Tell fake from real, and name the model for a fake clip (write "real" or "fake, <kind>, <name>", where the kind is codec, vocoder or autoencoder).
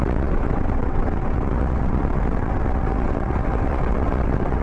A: fake, vocoder, WaveNeXt